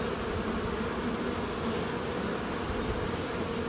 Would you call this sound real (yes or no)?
yes